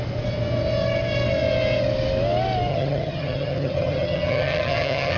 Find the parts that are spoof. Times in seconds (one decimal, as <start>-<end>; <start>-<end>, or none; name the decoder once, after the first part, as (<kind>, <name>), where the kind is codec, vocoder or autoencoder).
2.7-5.2 (vocoder, HiFi-GAN)